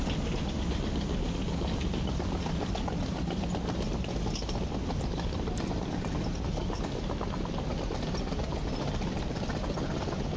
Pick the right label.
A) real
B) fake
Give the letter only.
A